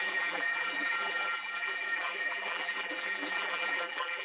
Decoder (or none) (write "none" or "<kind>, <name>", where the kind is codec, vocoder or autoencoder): vocoder, BigVGAN v2